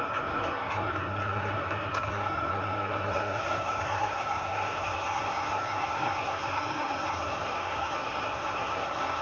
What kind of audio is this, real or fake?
fake